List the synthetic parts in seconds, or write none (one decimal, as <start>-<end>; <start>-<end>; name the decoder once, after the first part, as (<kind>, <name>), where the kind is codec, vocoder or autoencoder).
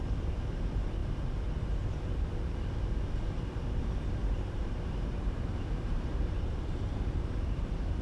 4.2-6.9 (vocoder, BigVGAN v2)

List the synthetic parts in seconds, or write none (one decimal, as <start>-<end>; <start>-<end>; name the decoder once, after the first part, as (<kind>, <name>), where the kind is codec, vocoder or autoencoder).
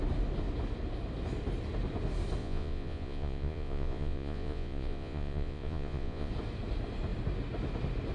2.4-6.3 (vocoder, Vocos)